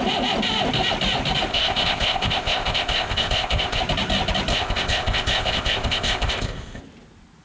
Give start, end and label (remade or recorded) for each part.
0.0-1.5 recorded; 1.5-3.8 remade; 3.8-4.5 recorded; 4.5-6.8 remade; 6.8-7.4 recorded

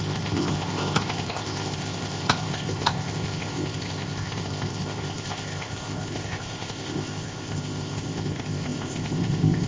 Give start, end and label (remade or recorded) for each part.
0.0-9.7 remade

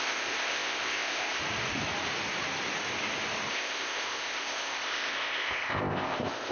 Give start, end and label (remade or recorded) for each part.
0.0-1.4 remade; 1.4-3.5 recorded; 3.5-6.5 remade

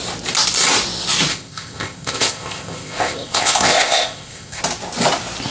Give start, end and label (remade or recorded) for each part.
0.0-1.3 recorded; 1.3-4.6 remade; 4.6-5.5 recorded

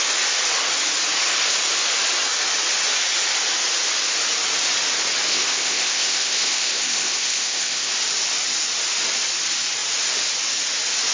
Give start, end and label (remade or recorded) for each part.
0.0-5.3 recorded; 5.3-7.9 remade; 7.9-11.1 recorded